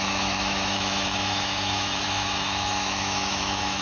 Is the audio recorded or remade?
remade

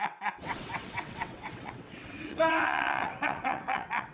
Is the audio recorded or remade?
remade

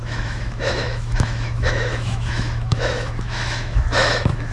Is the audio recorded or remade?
remade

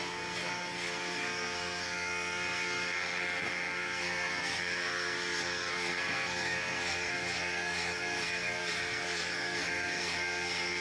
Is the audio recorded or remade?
remade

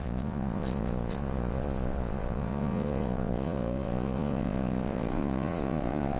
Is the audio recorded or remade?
remade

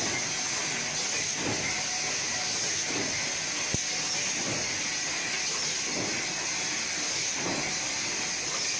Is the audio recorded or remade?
recorded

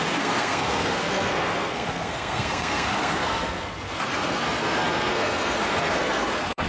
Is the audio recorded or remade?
remade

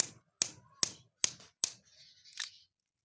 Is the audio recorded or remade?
recorded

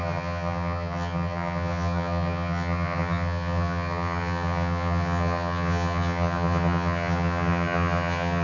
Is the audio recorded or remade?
remade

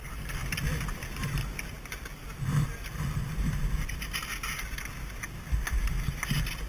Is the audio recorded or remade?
recorded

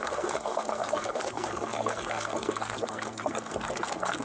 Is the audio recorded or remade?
remade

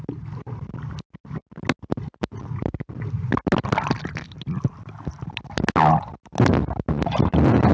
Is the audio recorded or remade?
recorded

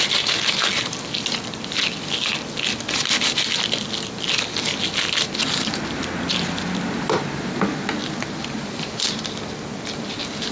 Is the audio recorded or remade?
recorded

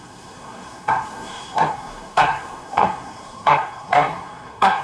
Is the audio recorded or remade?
remade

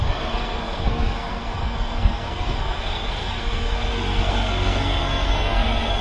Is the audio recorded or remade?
remade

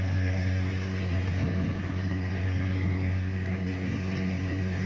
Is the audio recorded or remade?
remade